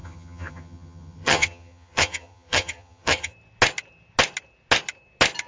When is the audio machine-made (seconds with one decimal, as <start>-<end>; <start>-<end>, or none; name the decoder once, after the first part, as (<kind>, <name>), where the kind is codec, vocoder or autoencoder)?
0.0-3.3 (vocoder, HiFi-GAN)